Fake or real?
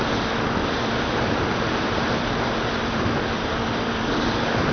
fake